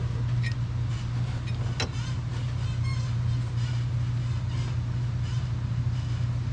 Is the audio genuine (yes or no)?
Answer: yes